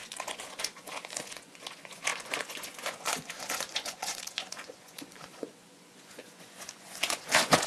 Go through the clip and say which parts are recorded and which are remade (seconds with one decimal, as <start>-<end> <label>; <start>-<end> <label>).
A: 0.0-7.7 remade